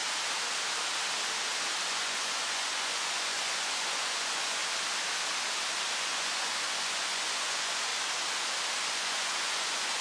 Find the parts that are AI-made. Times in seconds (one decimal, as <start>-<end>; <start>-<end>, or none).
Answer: 1.9-4.6; 6.0-7.9; 8.9-10.0